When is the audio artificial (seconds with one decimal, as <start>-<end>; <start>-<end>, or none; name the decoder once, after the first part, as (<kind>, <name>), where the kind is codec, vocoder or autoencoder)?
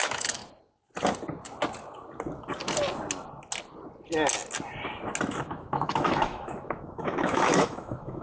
0.0-0.4 (autoencoder, DAC-VAE); 5.3-8.2